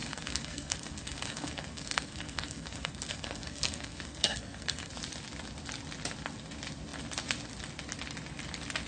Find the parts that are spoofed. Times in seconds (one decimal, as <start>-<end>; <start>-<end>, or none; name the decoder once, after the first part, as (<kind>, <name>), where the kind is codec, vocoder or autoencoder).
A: 0.0-4.9 (codec, SNAC)